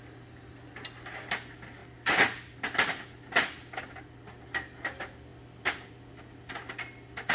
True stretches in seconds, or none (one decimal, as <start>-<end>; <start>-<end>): 0.0-7.3